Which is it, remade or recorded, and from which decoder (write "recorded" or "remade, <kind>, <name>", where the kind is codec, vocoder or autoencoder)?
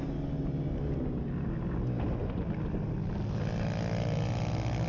recorded